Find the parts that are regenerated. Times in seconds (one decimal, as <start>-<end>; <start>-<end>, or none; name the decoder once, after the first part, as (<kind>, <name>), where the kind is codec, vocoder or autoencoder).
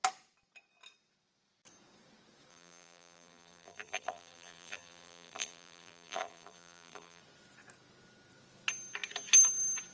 2.5-7.2 (vocoder, BigVGAN v2)